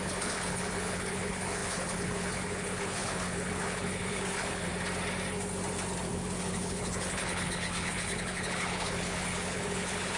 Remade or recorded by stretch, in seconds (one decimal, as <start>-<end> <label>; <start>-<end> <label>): 0.0-4.7 remade; 4.7-6.1 recorded; 6.1-10.2 remade